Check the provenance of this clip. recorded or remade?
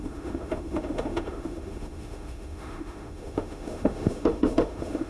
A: remade